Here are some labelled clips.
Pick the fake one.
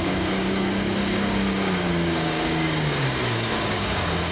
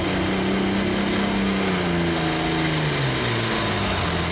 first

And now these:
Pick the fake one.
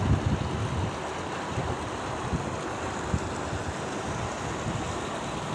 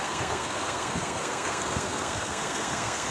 second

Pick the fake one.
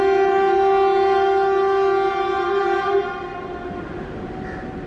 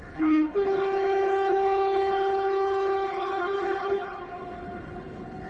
second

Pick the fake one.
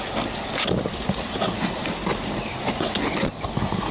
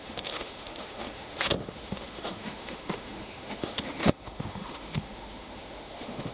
second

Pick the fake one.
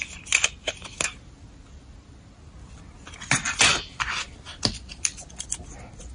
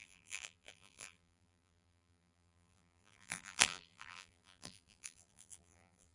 second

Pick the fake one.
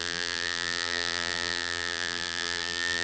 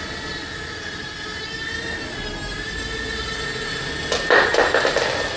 first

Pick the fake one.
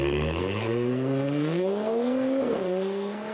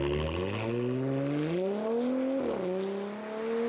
first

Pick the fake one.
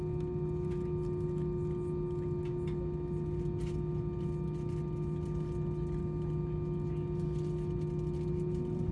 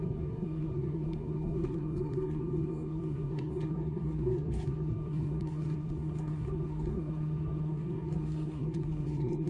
second